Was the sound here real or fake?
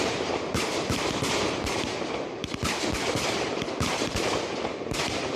fake